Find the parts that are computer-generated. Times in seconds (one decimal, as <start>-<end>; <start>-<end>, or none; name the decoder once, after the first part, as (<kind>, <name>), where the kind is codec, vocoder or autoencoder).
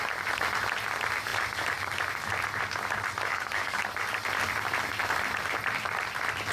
3.3-3.8 (codec, DAC)